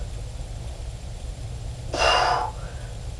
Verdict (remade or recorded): recorded